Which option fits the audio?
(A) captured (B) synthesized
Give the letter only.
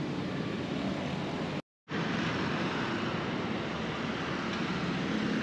A